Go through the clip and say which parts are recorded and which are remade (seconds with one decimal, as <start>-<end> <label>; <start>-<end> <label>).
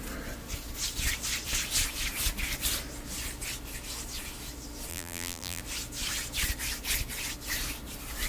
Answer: 0.0-4.9 recorded; 4.9-5.6 remade; 5.6-8.3 recorded